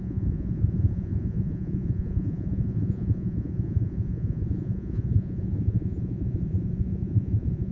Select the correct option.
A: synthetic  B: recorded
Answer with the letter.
A